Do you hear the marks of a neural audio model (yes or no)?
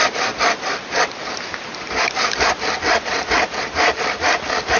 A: no